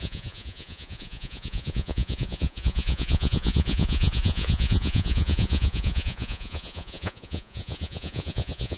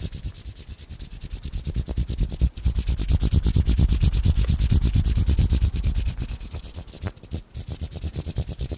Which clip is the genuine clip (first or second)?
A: second